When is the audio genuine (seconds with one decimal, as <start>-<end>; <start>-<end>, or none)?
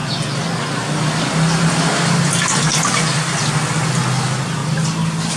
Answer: 0.0-1.2; 2.7-3.7; 4.6-5.4